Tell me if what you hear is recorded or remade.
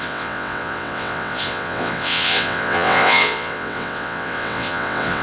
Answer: remade